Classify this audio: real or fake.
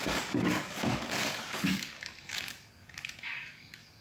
fake